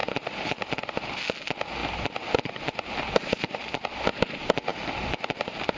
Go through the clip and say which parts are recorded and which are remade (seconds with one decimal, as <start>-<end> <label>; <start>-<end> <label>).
0.0-1.2 remade; 1.2-1.8 recorded; 1.8-4.2 remade; 4.2-4.7 recorded; 4.7-5.8 remade